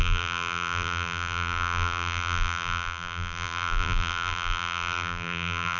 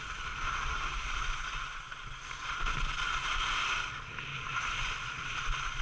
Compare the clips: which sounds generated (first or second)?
first